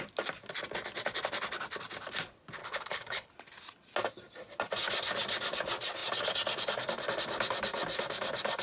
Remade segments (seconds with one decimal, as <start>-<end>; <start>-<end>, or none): 2.6-3.3